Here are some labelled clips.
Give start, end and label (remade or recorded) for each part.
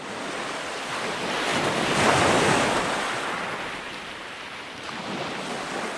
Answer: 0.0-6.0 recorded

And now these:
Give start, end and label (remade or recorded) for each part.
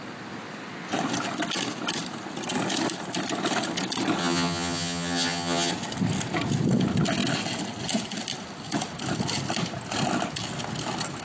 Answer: 0.0-4.2 recorded; 4.2-5.7 remade; 5.7-11.2 recorded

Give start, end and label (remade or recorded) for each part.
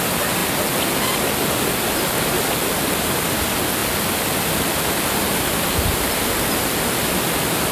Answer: 0.0-7.7 recorded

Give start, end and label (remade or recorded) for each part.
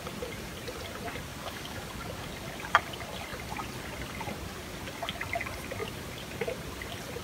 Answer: 0.0-1.3 recorded; 1.3-2.3 remade; 2.3-7.2 recorded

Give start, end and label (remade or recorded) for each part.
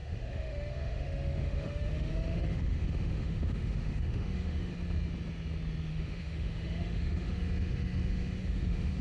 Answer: 0.0-4.7 remade; 4.7-5.9 recorded; 5.9-9.0 remade